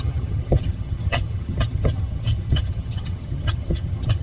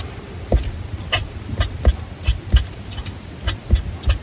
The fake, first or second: first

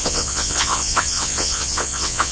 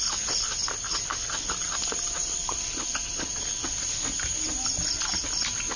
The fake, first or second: first